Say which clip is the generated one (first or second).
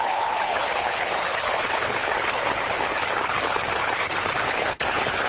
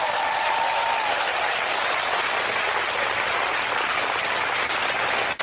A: first